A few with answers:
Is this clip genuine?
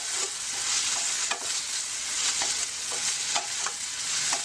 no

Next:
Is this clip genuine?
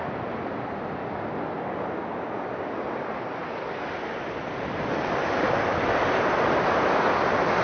yes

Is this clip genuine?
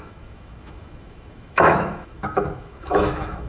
no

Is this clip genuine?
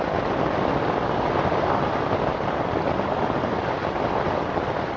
yes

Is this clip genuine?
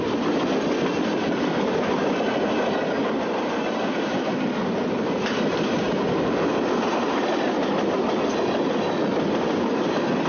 yes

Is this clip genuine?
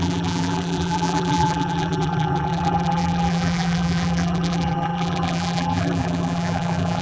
no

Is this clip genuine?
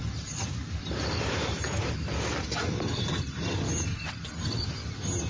no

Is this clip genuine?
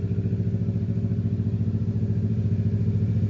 yes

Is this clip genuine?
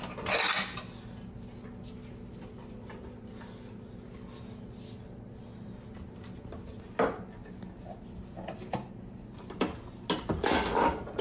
yes